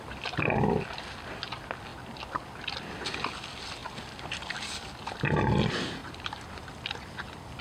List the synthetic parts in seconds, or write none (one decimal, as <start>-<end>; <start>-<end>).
6.0-6.7